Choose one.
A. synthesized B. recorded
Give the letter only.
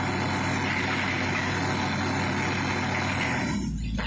B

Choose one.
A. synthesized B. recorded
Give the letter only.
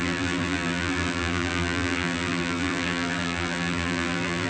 A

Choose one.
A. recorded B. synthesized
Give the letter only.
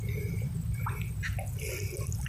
A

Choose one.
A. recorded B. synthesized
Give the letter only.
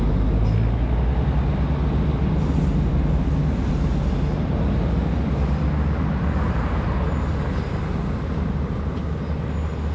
A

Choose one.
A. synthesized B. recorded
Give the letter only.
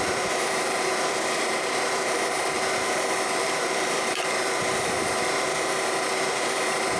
A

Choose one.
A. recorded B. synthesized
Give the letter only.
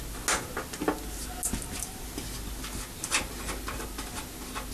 A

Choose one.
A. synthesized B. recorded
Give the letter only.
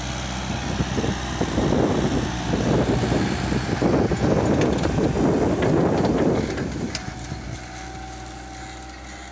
B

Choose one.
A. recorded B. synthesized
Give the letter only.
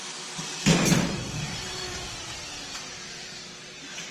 B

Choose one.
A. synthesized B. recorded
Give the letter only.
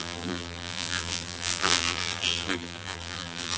A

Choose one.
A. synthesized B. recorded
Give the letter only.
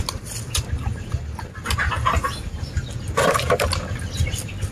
B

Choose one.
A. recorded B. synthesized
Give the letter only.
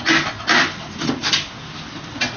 A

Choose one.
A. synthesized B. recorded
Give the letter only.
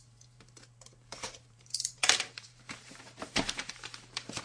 A